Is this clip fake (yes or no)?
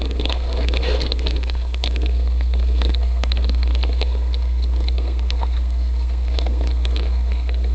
yes